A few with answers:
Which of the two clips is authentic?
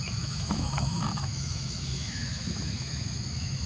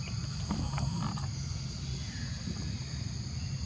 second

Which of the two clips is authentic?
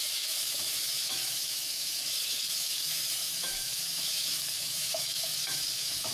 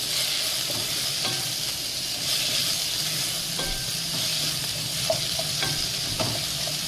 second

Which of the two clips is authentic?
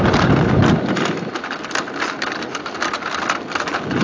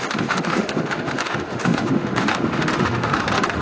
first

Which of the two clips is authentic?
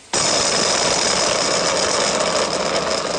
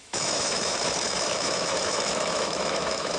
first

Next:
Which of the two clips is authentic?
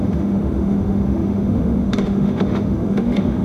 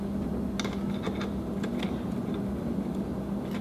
second